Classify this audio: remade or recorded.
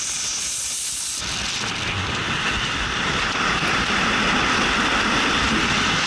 recorded